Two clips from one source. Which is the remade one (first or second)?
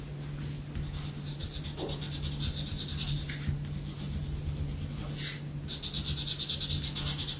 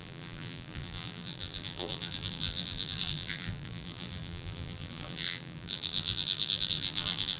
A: second